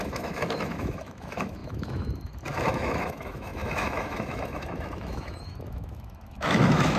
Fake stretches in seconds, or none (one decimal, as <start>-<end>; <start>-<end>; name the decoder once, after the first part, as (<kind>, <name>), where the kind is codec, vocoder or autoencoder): 0.0-7.0 (autoencoder, DAC-VAE)